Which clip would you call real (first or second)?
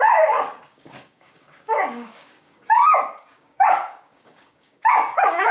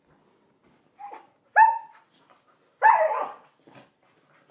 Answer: second